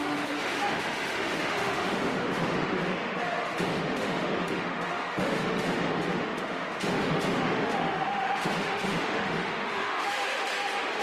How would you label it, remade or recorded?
remade